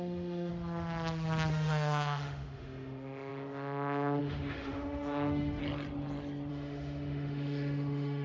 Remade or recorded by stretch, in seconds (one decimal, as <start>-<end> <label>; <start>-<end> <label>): 0.0-0.5 remade; 0.5-1.5 recorded; 1.5-5.6 remade; 5.6-6.5 recorded; 6.5-8.2 remade